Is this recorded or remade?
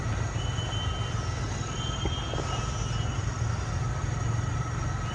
recorded